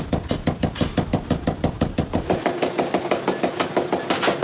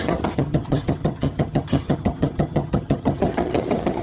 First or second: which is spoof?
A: second